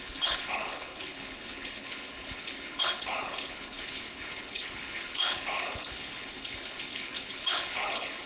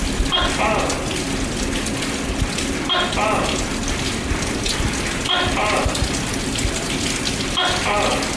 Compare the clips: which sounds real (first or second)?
second